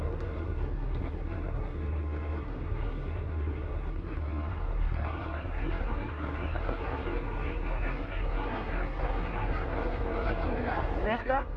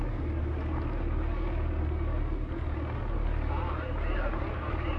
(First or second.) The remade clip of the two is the first